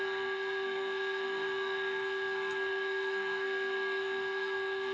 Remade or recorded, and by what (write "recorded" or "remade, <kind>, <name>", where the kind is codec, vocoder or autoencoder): remade, codec, SNAC